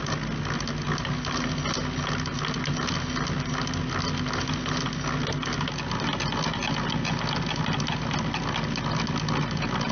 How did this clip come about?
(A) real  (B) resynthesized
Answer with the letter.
A